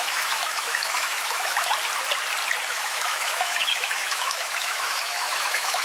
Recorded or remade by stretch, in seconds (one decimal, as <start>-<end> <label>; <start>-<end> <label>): 0.0-1.7 remade; 1.7-2.7 recorded; 2.7-5.8 remade